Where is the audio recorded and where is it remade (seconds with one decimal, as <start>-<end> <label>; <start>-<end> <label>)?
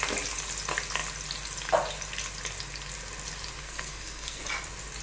0.0-3.6 recorded; 3.6-4.4 remade; 4.4-5.0 recorded